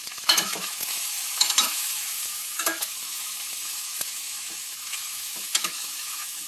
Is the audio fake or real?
fake